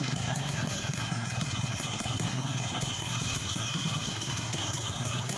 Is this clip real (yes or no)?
no